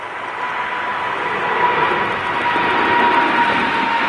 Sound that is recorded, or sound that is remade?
recorded